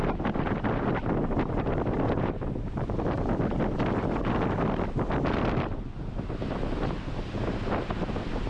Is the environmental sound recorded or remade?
recorded